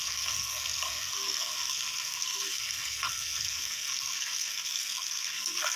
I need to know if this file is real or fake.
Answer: fake